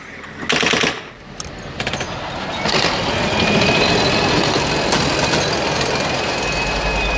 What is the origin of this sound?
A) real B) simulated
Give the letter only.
A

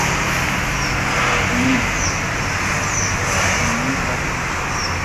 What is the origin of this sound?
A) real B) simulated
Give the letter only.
A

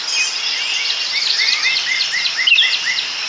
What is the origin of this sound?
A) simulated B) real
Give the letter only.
A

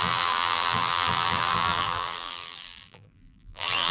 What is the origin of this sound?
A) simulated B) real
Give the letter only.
A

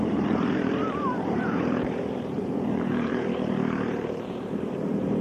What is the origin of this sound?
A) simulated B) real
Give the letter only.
A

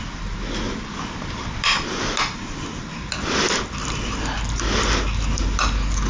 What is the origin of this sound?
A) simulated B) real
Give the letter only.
B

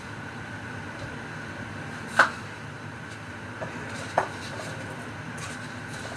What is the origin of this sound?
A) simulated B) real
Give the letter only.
A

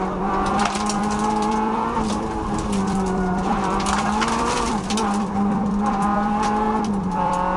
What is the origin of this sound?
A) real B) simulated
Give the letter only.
B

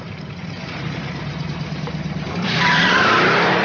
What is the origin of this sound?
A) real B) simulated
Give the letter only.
B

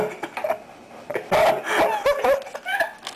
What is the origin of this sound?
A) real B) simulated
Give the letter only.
A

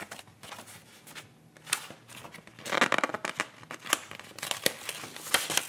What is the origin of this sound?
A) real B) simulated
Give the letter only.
A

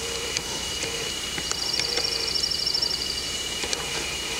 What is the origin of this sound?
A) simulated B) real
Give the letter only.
A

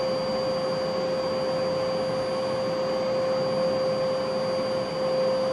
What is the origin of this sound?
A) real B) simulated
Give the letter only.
A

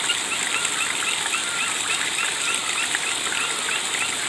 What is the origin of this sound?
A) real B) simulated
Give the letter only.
A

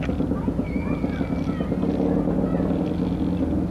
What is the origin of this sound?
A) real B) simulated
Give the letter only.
A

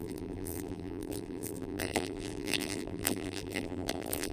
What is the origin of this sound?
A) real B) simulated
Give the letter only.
B